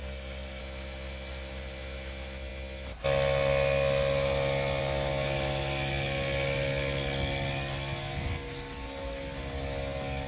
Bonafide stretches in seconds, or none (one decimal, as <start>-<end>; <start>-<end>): 0.6-10.3